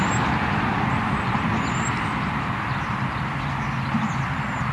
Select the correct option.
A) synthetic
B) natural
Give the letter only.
A